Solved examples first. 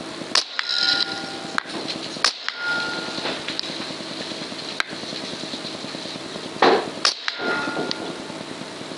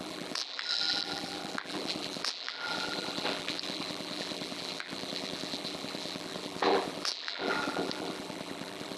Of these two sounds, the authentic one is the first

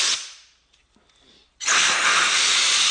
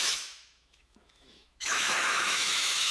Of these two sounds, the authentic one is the first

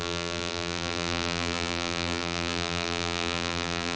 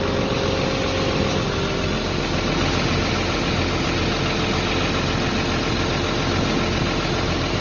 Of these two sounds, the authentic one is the second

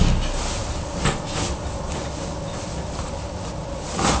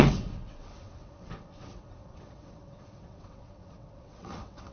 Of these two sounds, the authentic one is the first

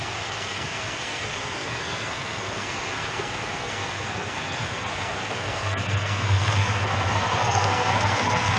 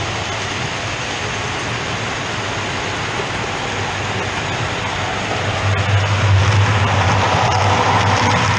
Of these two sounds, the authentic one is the second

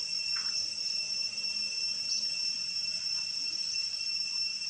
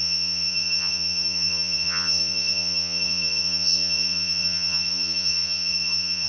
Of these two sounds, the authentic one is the first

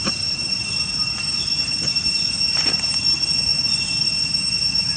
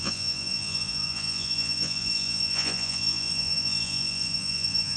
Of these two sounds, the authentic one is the first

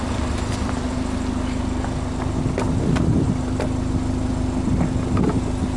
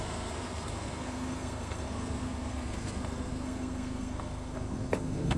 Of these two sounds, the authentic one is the first